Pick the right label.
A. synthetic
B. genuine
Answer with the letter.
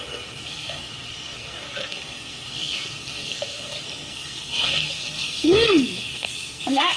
A